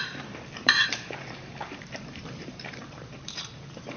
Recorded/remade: remade